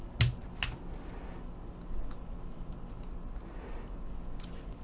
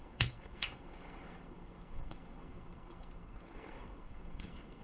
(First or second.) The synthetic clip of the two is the second